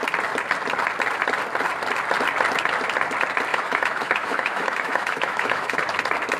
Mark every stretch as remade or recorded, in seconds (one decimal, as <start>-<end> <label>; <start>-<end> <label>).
0.0-3.5 recorded; 3.5-5.8 remade; 5.8-6.4 recorded